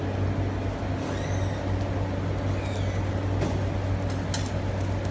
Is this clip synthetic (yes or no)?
no